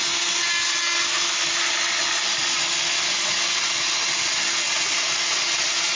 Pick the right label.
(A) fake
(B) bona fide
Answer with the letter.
B